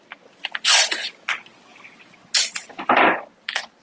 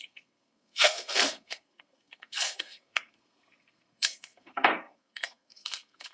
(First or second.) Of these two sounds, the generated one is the second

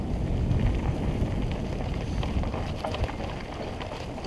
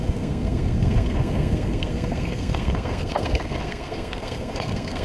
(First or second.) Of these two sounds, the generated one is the second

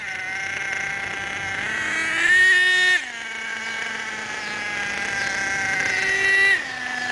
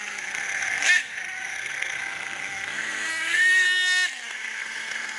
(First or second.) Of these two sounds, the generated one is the second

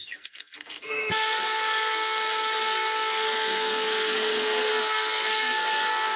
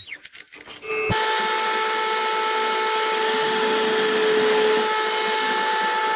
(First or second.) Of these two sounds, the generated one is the first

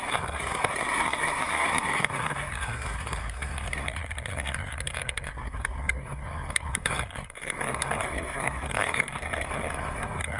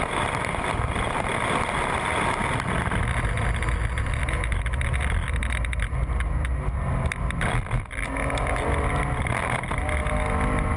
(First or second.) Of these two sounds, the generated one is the first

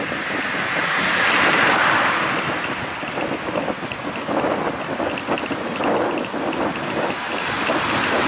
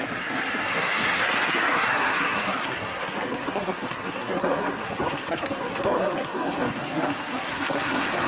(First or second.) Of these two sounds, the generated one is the second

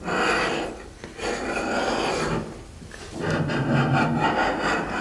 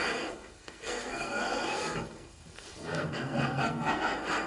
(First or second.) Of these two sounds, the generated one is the second